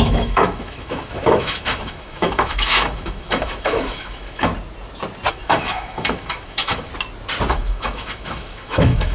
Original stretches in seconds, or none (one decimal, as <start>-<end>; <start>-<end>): 4.5-5.3; 6.9-7.5